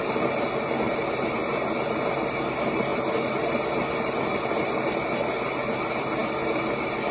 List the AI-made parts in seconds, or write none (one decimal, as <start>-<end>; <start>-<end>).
none